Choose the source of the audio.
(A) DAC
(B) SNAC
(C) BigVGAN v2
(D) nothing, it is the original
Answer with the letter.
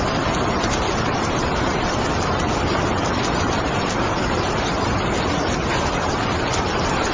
D